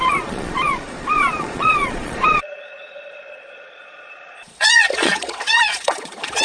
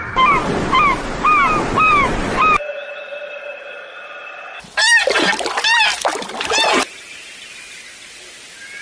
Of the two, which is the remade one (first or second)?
first